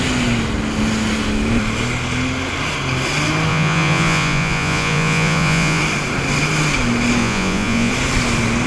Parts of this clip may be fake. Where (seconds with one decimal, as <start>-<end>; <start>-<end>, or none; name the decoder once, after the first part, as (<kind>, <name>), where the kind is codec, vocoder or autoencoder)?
3.5-5.8 (vocoder, Vocos); 7.2-7.9